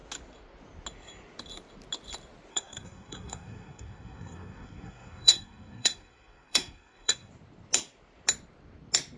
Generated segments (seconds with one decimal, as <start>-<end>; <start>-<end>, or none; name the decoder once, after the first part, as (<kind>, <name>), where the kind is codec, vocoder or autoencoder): 2.5-7.3 (codec, SNAC)